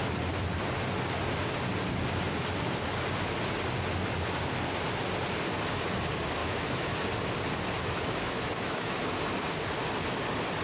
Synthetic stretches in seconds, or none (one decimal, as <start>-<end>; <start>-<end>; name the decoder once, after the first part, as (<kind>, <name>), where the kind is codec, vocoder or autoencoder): 6.4-7.1 (autoencoder, DAC-VAE); 7.8-8.9